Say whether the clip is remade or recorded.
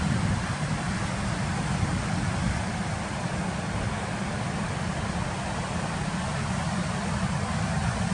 recorded